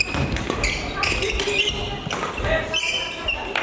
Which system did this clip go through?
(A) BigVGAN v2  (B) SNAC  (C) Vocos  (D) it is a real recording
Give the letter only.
D